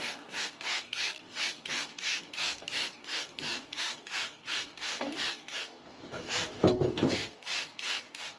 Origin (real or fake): fake